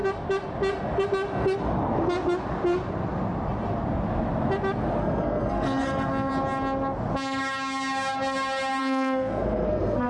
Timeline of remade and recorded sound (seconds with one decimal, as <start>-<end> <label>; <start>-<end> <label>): 0.0-5.0 recorded; 5.0-6.3 remade; 6.3-8.8 recorded; 8.8-10.1 remade